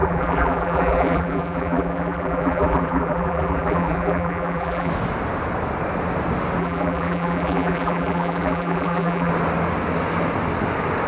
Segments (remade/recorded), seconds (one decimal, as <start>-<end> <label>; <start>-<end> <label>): 0.0-4.9 remade; 4.9-6.6 recorded; 6.6-9.3 remade; 9.3-11.1 recorded